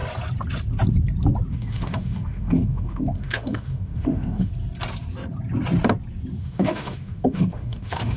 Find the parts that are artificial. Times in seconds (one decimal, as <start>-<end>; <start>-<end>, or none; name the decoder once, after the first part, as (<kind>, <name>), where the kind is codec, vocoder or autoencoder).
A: 1.5-4.5 (autoencoder, DAC-VAE); 6.4-8.2